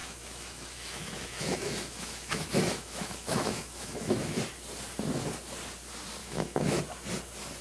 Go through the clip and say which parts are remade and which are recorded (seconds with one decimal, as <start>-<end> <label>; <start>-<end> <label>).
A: 0.0-4.4 remade; 4.4-6.2 recorded; 6.2-6.8 remade; 6.8-7.6 recorded